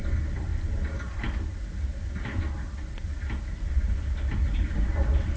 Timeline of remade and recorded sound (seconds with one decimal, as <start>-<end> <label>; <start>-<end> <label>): 0.0-5.4 recorded